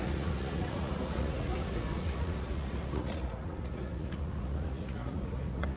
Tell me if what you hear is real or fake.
fake